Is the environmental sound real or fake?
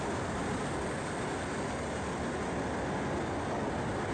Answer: real